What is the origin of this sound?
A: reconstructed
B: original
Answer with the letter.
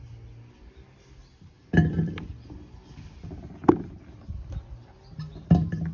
B